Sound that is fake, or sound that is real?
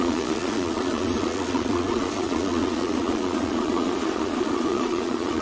fake